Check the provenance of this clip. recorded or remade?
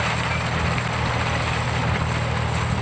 recorded